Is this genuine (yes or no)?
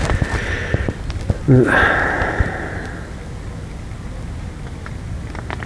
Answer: yes